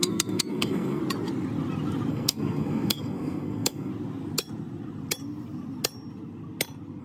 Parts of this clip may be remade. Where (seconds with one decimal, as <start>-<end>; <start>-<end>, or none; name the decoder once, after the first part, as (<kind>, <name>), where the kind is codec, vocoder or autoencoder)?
0.0-1.0 (codec, SNAC); 2.1-3.9